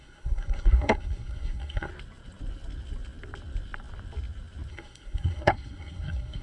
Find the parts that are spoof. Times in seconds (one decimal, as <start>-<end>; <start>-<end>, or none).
0.0-1.9; 4.7-6.4